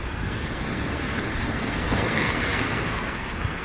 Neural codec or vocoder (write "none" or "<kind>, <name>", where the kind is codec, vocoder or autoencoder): codec, SNAC